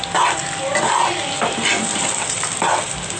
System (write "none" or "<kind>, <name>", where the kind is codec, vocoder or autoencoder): none